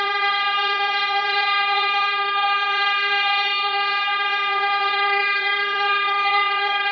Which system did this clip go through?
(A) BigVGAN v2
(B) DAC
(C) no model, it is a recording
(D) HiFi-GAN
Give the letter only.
D